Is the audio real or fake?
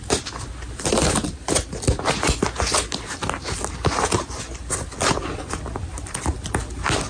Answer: real